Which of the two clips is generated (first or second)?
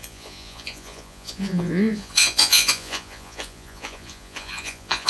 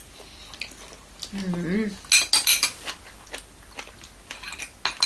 first